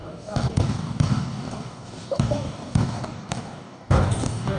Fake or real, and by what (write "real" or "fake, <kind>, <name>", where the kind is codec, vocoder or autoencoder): fake, codec, DAC